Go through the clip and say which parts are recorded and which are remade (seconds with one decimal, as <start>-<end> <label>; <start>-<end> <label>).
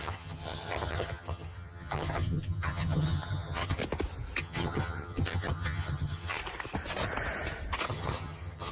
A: 0.0-3.8 remade; 3.8-4.4 recorded; 4.4-6.4 remade; 6.4-7.9 recorded; 7.9-8.7 remade